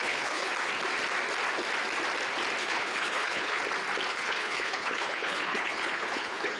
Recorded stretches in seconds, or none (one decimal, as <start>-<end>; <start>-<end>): 0.5-2.6; 3.6-4.1